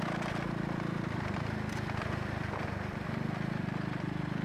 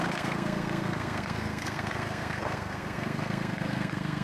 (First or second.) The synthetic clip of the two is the second